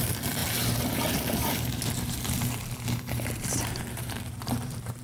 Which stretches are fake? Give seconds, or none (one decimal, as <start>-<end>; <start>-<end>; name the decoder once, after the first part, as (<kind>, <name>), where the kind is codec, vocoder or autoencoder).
0.0-5.0 (vocoder, BigVGAN v2)